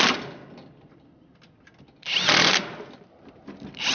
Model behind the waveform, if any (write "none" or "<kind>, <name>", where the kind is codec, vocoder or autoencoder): vocoder, BigVGAN v2